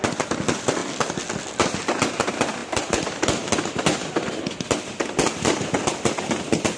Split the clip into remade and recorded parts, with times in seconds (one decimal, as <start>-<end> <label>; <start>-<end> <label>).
0.0-6.8 recorded